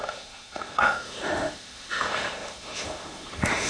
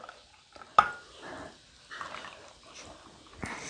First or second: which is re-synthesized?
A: first